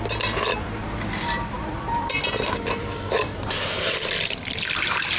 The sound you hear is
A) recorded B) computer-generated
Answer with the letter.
B